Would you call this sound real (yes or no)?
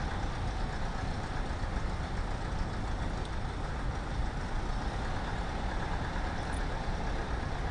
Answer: yes